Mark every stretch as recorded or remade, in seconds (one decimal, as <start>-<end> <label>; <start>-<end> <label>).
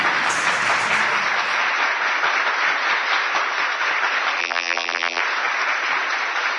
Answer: 0.0-4.4 recorded; 4.4-5.2 remade; 5.2-6.6 recorded